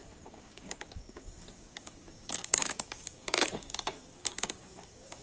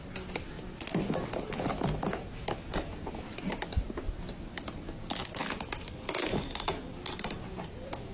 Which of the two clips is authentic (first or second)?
second